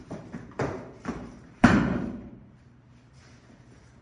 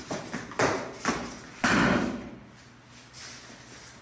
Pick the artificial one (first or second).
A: first